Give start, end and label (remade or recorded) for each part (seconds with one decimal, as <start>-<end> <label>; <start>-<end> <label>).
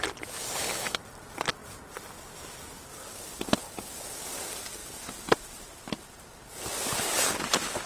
0.0-1.6 recorded; 1.6-2.2 remade; 2.2-4.8 recorded; 4.8-6.9 remade; 6.9-7.9 recorded